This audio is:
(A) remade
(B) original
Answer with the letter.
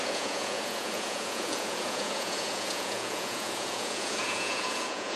A